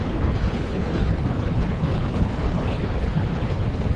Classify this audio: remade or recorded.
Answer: remade